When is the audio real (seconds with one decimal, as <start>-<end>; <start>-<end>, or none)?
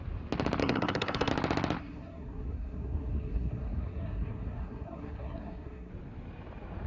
0.0-0.6; 1.3-1.8; 5.9-6.9